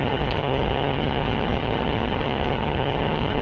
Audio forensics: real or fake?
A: fake